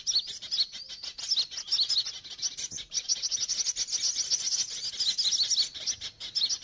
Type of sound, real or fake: real